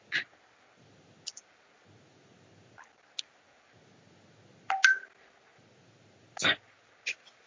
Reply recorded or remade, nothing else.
recorded